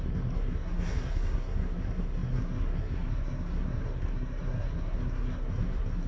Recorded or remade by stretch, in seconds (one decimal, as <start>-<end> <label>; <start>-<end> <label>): 0.0-6.1 remade